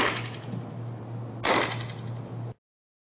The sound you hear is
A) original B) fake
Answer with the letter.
A